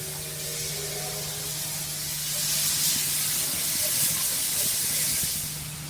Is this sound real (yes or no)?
yes